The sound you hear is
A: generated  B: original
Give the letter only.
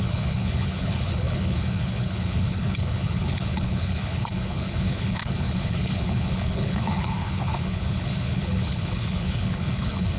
A